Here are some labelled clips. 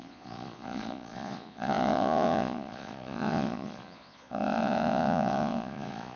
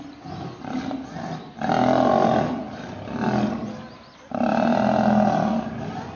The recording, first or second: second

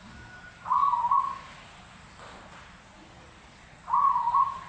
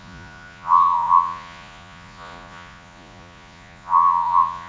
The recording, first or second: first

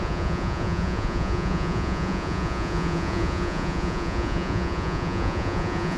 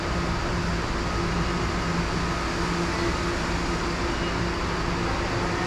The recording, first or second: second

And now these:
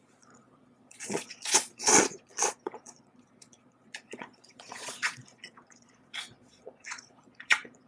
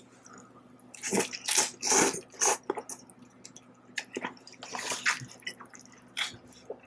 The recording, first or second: second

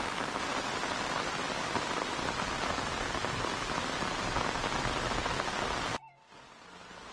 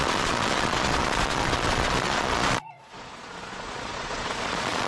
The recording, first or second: first